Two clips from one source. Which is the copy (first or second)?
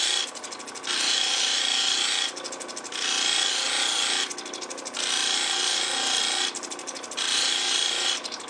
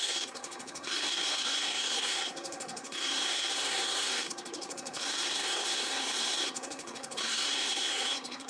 second